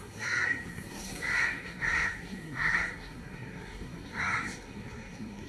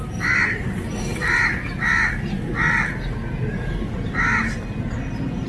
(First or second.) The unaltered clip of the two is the second